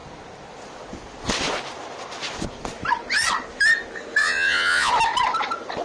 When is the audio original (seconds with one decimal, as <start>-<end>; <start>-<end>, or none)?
0.0-4.2; 4.9-5.8